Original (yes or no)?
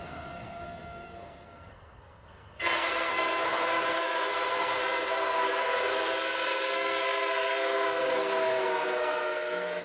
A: no